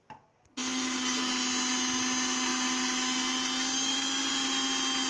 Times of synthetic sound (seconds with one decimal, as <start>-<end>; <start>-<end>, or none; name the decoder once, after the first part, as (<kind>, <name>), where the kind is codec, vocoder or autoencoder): none